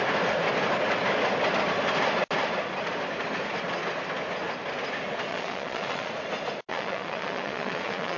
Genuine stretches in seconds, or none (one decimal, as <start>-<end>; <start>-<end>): 0.0-5.3; 6.1-6.7